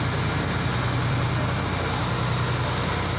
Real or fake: real